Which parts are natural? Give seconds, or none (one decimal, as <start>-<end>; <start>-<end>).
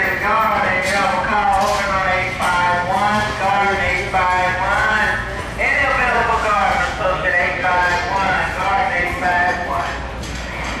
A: 0.0-4.8; 7.0-10.8